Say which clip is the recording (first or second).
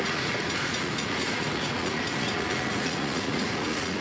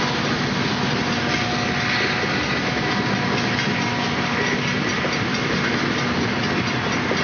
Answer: second